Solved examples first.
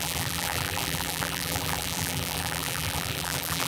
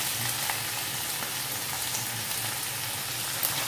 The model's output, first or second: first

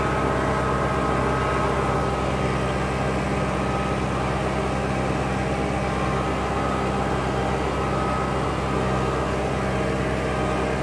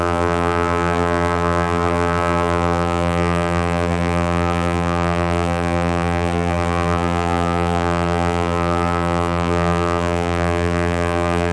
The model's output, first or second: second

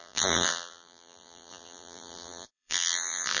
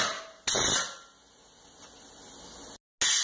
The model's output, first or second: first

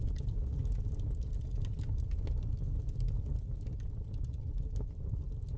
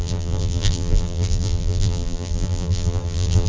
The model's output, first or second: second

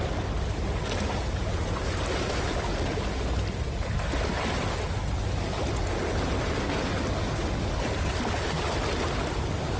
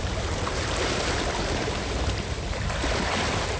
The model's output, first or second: second